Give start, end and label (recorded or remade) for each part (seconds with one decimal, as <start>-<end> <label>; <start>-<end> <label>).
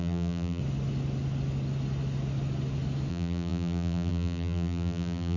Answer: 0.0-0.6 remade; 0.6-3.1 recorded; 3.1-5.4 remade